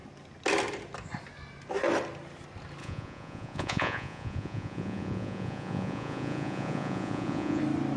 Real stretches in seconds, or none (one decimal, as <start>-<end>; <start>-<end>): 0.0-2.8; 7.6-8.0